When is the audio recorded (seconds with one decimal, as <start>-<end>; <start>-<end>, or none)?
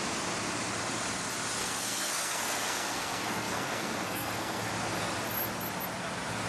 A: 0.0-1.6; 4.7-6.5